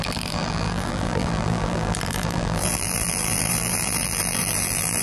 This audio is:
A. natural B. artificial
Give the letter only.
B